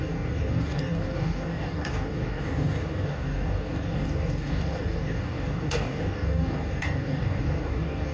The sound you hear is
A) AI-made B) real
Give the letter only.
A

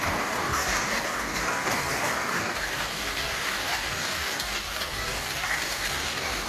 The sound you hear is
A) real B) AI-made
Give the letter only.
B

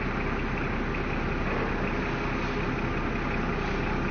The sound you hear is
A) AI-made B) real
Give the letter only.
B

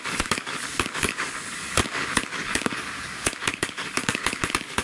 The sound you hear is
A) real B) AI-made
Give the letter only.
B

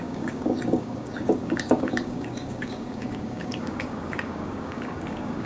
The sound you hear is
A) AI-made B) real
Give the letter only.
A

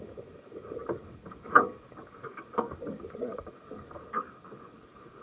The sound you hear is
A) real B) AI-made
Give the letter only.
B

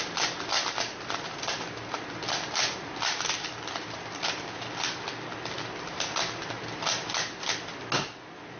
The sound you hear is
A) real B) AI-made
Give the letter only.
A